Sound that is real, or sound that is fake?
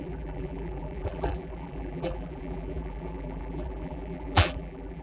fake